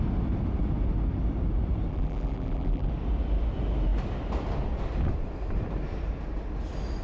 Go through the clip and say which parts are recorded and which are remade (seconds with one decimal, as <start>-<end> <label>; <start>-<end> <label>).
0.0-1.9 recorded; 1.9-2.9 remade; 2.9-7.0 recorded